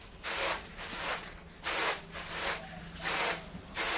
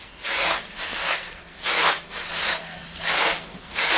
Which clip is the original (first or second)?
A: first